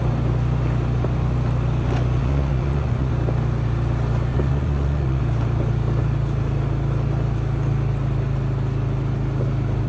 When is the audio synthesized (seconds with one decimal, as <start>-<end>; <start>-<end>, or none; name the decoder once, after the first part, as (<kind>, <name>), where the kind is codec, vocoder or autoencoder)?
2.2-3.1 (vocoder, Vocos); 4.3-5.2

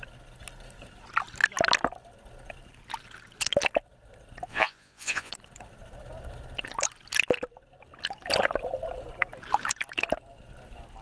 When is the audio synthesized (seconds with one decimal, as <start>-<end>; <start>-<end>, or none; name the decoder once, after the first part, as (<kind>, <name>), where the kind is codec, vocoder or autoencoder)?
4.5-5.3 (vocoder, Vocos)

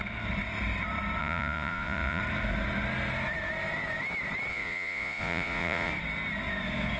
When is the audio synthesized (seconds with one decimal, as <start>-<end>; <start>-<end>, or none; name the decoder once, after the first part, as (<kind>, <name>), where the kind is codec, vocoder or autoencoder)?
1.2-2.2 (vocoder, Vocos); 4.5-5.9